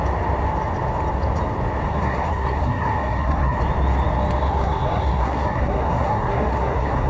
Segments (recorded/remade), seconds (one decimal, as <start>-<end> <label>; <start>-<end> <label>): 0.0-1.9 recorded; 1.9-3.6 remade; 3.6-4.4 recorded; 4.4-7.1 remade